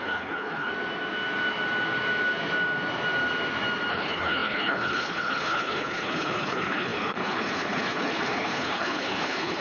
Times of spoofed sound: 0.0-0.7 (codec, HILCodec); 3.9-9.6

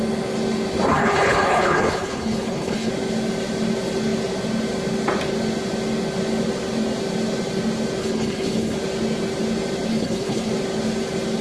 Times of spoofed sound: 1.0-2.9 (codec, HILCodec); 8.0-8.8; 9.9-10.5

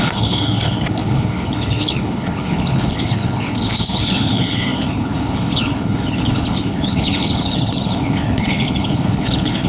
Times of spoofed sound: 0.0-9.7 (codec, HILCodec)

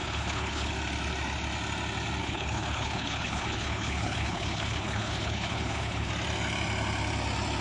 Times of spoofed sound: 0.0-0.7 (codec, HILCodec); 2.2-6.1

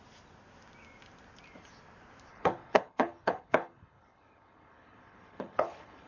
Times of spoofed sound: 2.3-6.1 (codec, HILCodec)